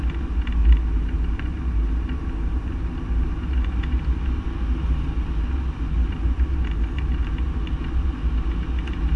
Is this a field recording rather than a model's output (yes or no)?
yes